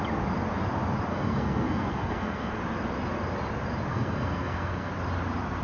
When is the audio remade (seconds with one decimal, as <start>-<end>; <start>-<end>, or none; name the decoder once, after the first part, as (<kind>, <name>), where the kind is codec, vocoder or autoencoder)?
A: 1.1-2.6 (codec, SNAC); 3.9-4.9